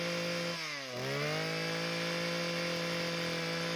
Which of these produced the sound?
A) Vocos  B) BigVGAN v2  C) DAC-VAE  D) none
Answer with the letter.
D